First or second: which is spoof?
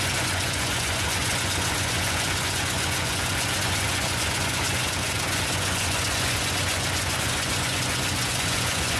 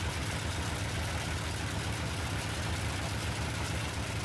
first